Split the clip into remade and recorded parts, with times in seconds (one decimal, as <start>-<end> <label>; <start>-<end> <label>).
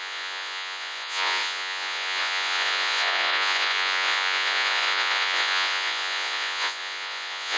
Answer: 0.0-7.6 remade